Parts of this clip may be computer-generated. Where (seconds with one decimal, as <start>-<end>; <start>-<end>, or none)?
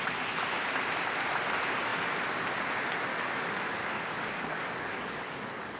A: 3.1-5.8